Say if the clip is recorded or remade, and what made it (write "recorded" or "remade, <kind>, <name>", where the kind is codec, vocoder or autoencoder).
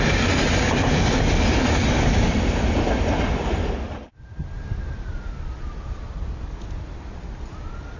recorded